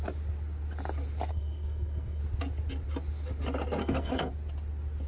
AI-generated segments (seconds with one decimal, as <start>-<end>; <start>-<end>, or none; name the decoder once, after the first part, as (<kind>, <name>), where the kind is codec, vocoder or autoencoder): 1.3-2.2 (codec, SNAC); 3.8-4.3

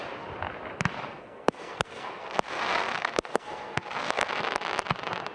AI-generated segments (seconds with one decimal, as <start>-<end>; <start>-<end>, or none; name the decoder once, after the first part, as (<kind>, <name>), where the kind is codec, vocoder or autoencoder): 1.1-4.3 (codec, SNAC)

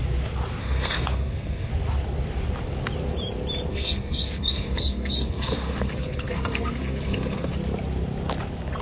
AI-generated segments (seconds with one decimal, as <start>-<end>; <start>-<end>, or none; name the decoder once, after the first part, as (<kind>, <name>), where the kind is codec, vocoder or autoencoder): 0.6-1.7 (codec, SNAC); 3.7-7.5